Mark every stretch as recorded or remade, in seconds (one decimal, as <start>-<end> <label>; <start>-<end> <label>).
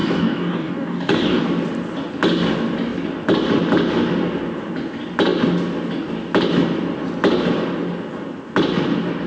0.0-1.4 remade; 1.4-9.3 recorded